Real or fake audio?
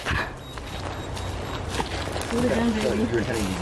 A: real